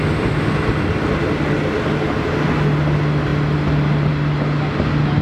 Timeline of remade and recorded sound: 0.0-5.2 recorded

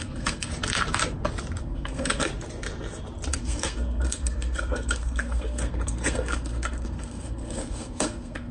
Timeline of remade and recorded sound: 0.0-0.5 remade; 0.5-1.6 recorded; 1.6-2.3 remade; 2.3-3.3 recorded; 3.3-8.5 remade

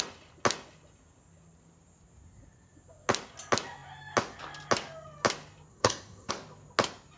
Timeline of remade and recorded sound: 0.0-5.7 recorded; 5.7-6.3 remade; 6.3-7.2 recorded

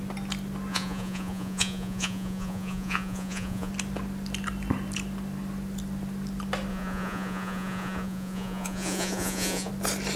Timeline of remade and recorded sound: 0.0-0.7 recorded; 0.7-3.7 remade; 3.7-6.7 recorded; 6.7-9.7 remade; 9.7-10.2 recorded

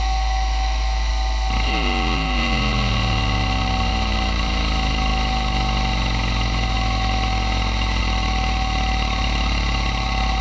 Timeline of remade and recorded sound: 0.0-1.1 remade; 1.1-3.9 recorded; 3.9-10.4 remade

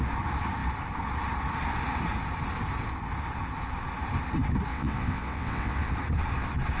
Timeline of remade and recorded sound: 0.0-4.7 recorded; 4.7-5.9 remade; 5.9-6.8 recorded